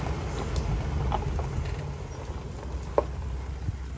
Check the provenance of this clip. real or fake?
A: real